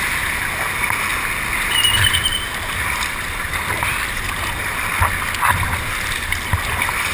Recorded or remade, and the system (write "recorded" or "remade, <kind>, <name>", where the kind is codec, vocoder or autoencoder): recorded